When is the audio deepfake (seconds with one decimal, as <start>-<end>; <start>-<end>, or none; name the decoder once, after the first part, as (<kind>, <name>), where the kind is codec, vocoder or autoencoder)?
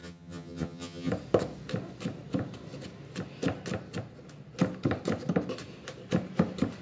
0.0-1.1 (vocoder, HiFi-GAN)